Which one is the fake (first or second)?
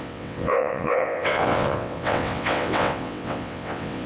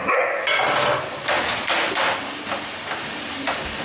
first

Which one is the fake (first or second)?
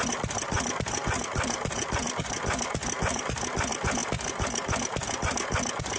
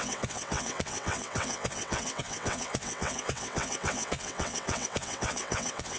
second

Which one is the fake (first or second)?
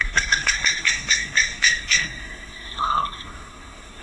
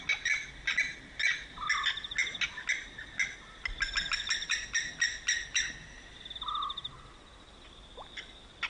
first